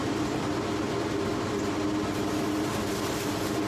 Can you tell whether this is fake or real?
real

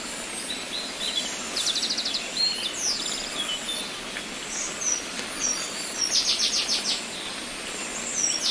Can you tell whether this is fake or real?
real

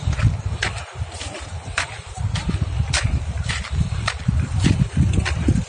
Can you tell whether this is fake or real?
fake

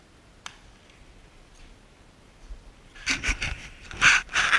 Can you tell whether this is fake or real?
real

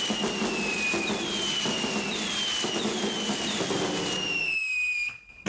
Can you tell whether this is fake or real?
real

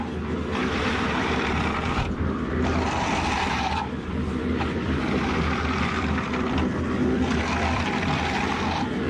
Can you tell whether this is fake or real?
fake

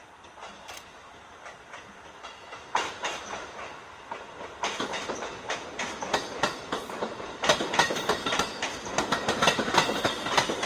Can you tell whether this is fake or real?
real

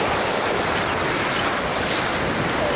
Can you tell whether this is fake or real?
real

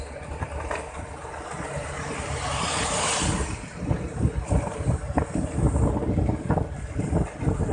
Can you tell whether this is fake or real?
real